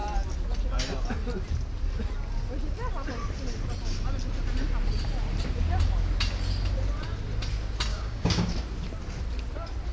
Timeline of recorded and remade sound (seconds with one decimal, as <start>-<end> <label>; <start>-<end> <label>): 0.0-7.9 recorded; 7.9-8.5 remade; 8.5-9.9 recorded